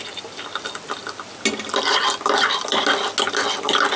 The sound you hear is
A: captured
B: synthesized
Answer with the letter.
A